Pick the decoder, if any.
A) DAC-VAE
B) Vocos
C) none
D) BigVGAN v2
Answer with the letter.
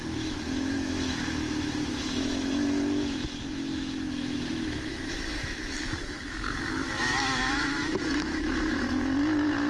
A